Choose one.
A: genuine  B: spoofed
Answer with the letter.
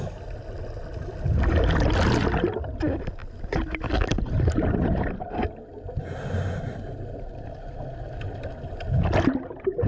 A